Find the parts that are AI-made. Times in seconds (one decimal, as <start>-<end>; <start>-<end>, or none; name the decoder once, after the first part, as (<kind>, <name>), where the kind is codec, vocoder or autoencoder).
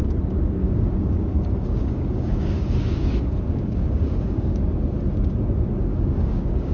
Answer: 0.6-4.6 (codec, DAC); 5.9-6.7